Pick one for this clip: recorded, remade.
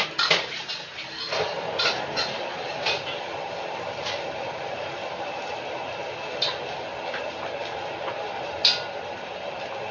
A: remade